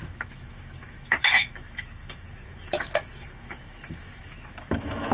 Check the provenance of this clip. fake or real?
fake